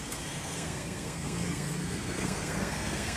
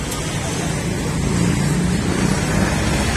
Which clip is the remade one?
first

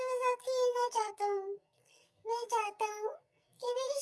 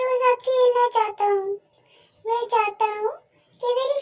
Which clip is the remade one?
first